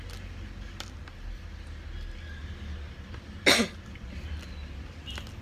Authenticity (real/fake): real